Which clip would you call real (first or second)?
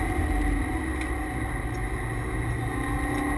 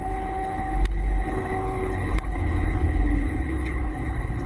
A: first